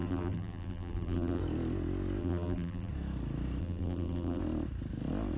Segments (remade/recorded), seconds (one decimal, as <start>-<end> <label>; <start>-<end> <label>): 0.0-1.4 remade; 1.4-2.2 recorded; 2.2-2.9 remade; 2.9-3.6 recorded; 3.6-4.4 remade; 4.4-5.4 recorded